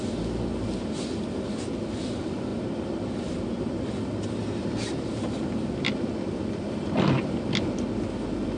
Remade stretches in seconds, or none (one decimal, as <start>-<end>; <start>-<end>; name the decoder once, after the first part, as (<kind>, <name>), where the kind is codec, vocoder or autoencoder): none